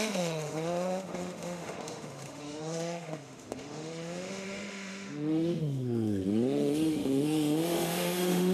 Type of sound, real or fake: fake